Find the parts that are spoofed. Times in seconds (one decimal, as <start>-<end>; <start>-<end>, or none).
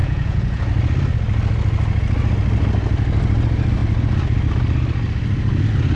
0.0-0.6